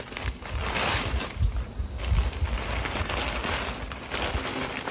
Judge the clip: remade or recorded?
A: recorded